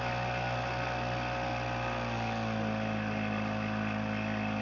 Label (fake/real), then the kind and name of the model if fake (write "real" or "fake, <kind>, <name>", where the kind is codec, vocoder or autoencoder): real